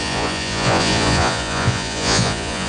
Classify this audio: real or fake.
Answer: fake